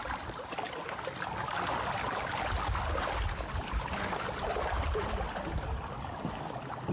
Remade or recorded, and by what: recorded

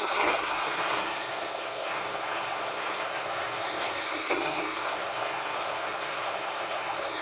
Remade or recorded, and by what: remade, codec, SNAC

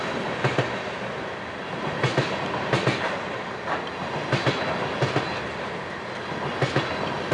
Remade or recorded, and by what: recorded